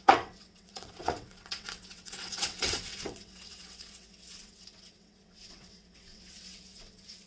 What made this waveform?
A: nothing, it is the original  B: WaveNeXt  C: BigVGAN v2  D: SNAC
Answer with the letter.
B